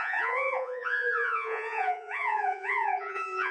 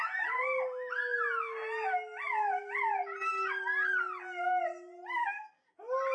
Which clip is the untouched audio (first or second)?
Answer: second